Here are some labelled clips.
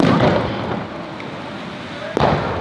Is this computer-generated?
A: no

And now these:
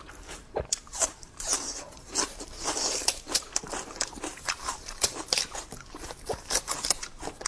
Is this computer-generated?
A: yes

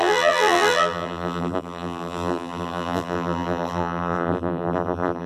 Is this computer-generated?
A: yes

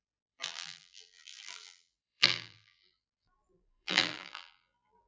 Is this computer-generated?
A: yes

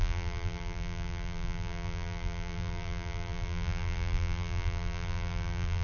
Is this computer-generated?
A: yes